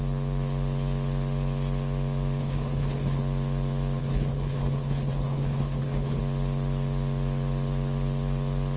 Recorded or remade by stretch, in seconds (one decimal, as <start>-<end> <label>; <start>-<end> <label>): 0.0-2.4 recorded; 2.4-3.2 remade; 3.2-4.0 recorded; 4.0-6.2 remade; 6.2-8.8 recorded